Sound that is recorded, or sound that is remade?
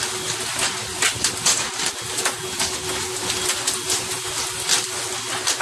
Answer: recorded